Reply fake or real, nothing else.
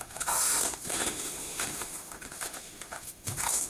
fake